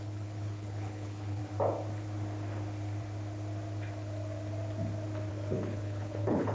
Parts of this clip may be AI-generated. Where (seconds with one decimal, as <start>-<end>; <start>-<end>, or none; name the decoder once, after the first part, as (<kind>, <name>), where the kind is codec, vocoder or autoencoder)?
0.0-1.4 (codec, HILCodec); 5.3-6.5